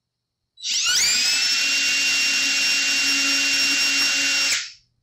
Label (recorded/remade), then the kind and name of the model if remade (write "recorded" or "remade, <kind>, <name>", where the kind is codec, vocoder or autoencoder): recorded